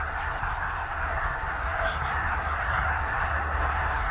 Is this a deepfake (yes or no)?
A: yes